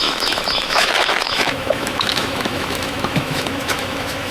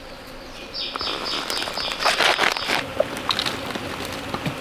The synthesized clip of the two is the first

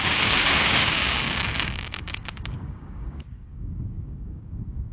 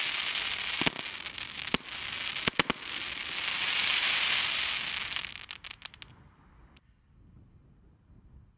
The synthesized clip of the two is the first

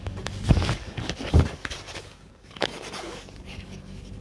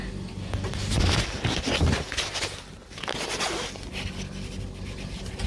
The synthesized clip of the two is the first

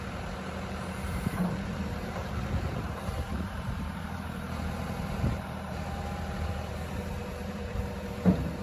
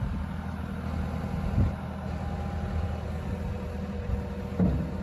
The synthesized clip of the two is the first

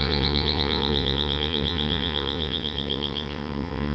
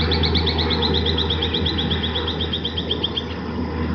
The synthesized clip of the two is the first